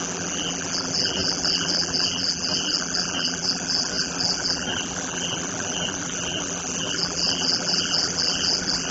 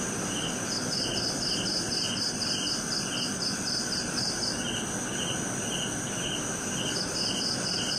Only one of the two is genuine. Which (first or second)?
second